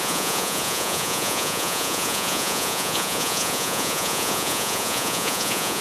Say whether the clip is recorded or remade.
remade